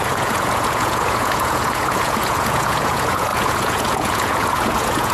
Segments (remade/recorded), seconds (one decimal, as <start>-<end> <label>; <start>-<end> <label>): 0.0-5.1 remade